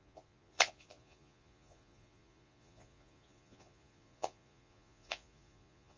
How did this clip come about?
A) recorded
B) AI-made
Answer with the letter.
B